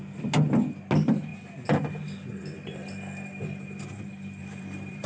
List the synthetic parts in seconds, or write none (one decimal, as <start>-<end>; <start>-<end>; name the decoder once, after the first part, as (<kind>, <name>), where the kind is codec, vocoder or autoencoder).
4.4-5.1 (vocoder, BigVGAN v2)